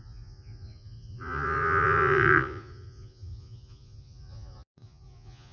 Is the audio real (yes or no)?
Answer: no